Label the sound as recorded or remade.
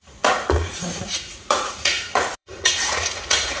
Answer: remade